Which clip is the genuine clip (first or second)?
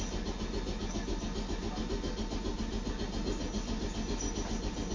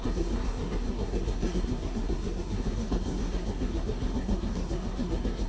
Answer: first